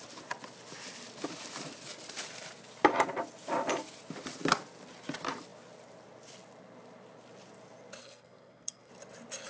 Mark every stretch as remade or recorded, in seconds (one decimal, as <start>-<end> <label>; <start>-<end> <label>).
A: 0.0-8.0 recorded; 8.0-8.9 remade; 8.9-9.5 recorded